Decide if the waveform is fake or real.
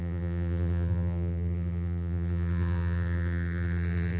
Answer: fake